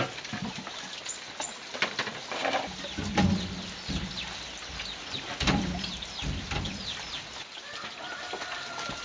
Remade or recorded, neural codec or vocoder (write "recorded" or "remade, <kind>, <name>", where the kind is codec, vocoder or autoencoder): recorded